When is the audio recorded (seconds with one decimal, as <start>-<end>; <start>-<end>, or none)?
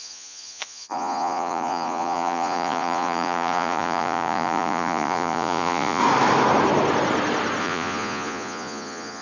6.0-7.6